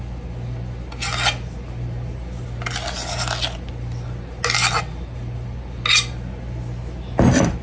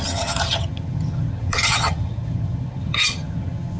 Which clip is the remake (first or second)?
second